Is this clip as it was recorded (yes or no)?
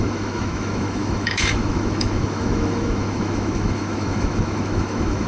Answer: no